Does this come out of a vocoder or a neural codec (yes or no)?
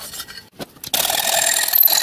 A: no